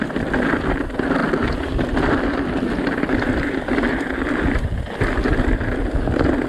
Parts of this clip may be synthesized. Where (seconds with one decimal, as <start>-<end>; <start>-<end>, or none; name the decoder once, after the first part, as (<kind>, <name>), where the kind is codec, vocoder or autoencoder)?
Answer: none